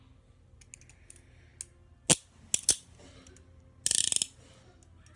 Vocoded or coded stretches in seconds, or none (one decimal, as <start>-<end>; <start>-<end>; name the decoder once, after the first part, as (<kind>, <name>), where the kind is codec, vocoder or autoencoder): none